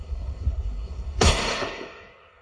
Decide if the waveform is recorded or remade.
remade